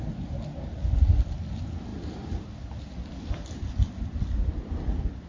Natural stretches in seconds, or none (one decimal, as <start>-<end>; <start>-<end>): 0.0-1.9; 4.7-5.3